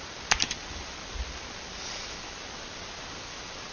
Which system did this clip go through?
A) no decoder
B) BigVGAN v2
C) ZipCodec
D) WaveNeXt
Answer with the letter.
A